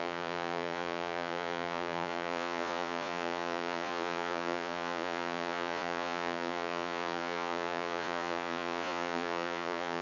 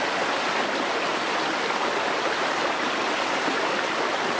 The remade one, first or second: first